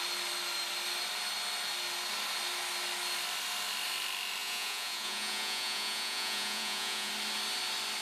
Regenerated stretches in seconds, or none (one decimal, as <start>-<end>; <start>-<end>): 4.4-7.1